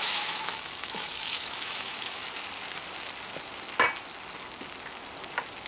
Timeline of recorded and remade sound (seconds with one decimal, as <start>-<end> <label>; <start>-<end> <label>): 0.0-2.2 remade; 2.2-5.7 recorded